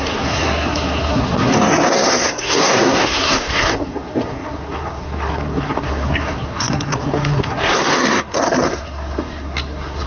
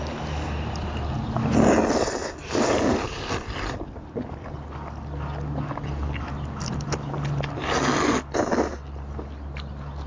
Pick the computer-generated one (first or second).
first